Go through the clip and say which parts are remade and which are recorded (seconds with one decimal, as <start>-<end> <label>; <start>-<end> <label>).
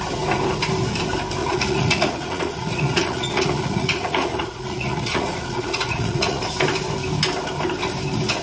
0.0-1.4 recorded; 1.4-6.4 remade; 6.4-8.4 recorded